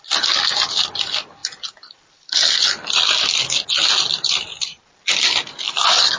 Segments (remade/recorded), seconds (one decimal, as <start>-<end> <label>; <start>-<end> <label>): 0.0-6.2 recorded

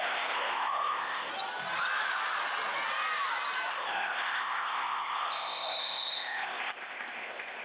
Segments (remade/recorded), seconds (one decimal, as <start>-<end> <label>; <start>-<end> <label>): 0.0-1.3 remade; 1.3-3.7 recorded; 3.7-7.6 remade

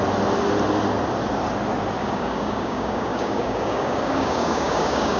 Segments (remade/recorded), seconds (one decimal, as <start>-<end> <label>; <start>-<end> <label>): 0.0-2.0 recorded; 2.0-5.2 remade

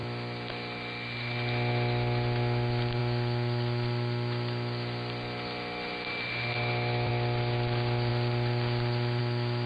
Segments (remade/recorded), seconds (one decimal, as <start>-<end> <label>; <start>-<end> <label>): 0.0-9.7 recorded

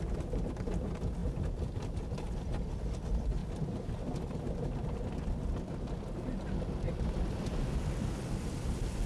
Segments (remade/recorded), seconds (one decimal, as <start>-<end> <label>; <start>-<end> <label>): 0.0-9.1 recorded

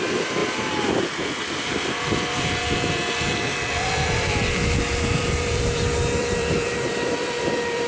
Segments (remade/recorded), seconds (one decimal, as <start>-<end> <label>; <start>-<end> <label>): 0.0-7.9 remade

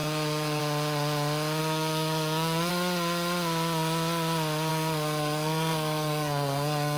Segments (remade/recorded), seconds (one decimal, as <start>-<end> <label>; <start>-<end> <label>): 0.0-0.6 remade; 0.6-1.6 recorded; 1.6-2.7 remade; 2.7-4.7 recorded; 4.7-7.0 remade